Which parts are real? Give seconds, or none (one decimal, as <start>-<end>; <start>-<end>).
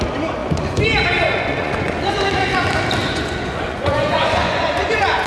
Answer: 0.0-0.4; 2.2-3.0